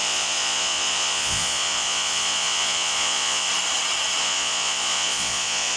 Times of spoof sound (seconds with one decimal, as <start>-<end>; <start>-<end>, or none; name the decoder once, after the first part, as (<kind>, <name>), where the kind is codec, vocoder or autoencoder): 0.0-3.5 (vocoder, Vocos); 4.2-5.8